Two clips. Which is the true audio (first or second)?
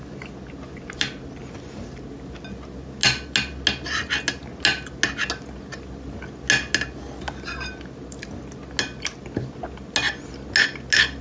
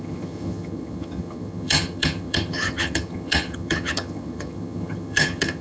first